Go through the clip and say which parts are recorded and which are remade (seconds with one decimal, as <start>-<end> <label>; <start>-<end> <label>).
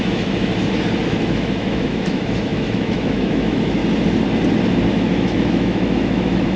0.0-0.5 remade; 0.5-1.0 recorded; 1.0-3.8 remade; 3.8-4.9 recorded; 4.9-6.6 remade